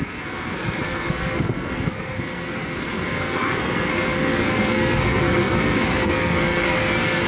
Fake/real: fake